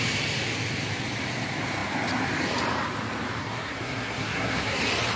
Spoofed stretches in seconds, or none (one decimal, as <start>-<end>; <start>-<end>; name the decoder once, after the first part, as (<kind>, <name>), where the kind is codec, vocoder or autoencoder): 3.4-4.8 (codec, SNAC)